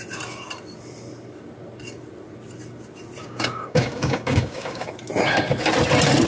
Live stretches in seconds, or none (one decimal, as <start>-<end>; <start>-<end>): 0.0-3.2; 4.9-6.3